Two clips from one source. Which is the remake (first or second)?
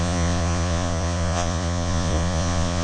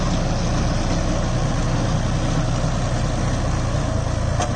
first